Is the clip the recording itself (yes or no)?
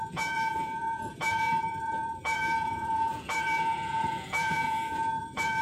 no